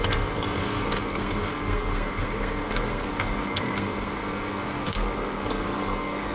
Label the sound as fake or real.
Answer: fake